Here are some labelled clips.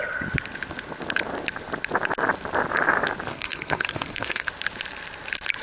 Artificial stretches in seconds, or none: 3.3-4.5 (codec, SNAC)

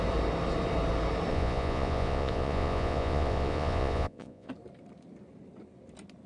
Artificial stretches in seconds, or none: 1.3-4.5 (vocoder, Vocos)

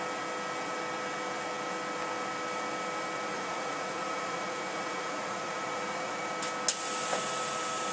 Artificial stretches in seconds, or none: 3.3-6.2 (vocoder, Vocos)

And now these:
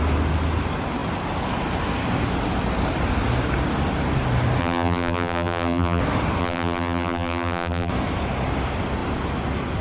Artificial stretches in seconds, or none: 4.6-6.0 (vocoder, BigVGAN v2); 6.4-7.9

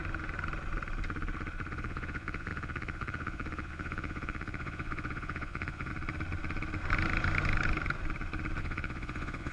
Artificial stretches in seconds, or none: 1.7-5.9 (vocoder, Vocos); 8.6-9.5